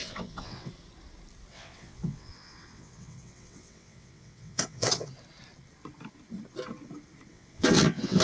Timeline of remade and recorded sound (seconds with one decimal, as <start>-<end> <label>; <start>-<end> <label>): 0.0-0.7 remade; 0.7-1.5 recorded; 1.5-5.1 remade; 5.1-7.3 recorded; 7.3-8.2 remade